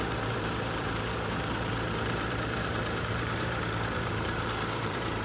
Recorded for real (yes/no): no